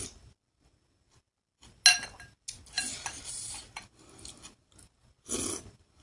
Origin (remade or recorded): recorded